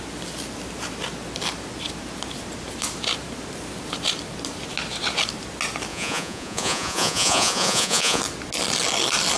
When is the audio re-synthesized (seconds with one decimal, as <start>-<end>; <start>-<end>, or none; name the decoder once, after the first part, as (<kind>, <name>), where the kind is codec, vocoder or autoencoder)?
5.9-8.2 (vocoder, Vocos)